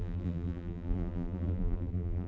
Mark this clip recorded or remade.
remade